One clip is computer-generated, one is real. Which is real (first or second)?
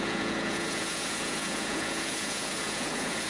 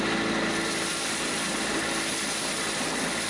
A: second